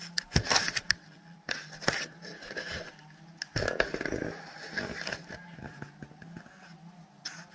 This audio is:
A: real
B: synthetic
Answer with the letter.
A